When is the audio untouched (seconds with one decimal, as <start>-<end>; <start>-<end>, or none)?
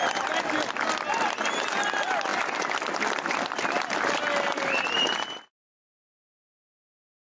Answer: 0.0-7.3